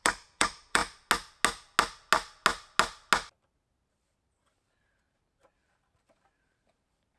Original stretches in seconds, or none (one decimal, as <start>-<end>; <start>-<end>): 0.8-3.9